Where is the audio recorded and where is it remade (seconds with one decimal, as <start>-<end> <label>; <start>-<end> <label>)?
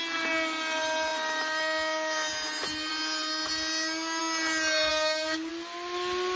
0.0-4.9 recorded; 4.9-5.5 remade; 5.5-6.4 recorded